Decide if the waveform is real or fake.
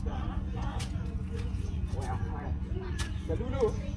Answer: fake